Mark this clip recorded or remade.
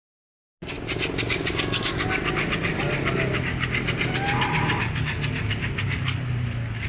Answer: recorded